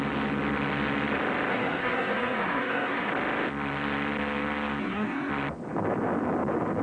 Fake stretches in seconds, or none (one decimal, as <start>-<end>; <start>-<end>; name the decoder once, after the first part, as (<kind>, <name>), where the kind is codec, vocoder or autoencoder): 1.5-3.1 (codec, SNAC); 4.8-5.3